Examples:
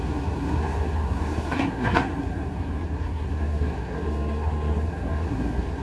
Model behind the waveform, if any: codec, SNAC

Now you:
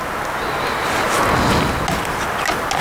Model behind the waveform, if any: none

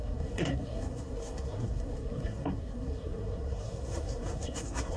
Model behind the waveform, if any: codec, SNAC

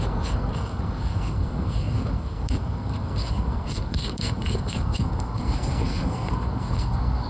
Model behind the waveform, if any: codec, SNAC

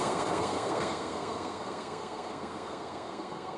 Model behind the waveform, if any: codec, SNAC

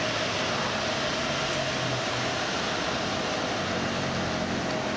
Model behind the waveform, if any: none